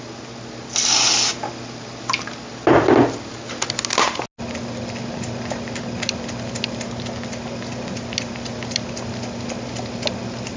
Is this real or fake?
real